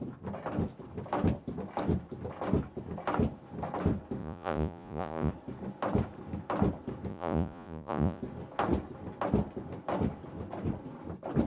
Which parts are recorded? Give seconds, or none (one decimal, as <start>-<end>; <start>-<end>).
0.0-4.2; 5.3-7.1; 8.2-11.5

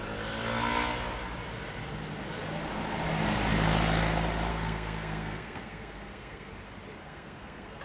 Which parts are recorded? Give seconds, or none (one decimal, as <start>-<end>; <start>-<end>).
0.0-4.5; 6.5-7.0

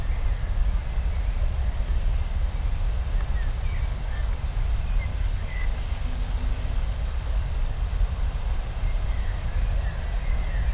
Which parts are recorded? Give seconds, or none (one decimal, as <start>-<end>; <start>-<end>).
0.0-3.9; 4.4-5.1; 7.9-10.7

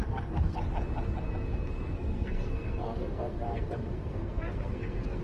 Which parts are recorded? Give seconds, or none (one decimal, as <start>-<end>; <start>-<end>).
0.6-1.9

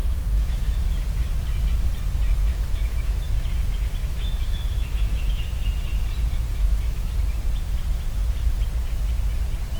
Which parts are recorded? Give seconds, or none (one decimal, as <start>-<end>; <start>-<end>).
0.8-2.5; 3.2-4.0; 5.6-6.5; 7.1-9.8